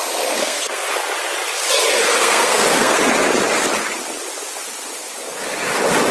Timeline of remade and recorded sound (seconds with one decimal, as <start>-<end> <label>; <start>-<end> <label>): 0.0-0.4 recorded; 0.4-0.9 remade; 0.9-2.2 recorded; 2.2-3.0 remade; 3.0-6.1 recorded